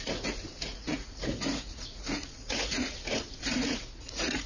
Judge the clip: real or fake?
fake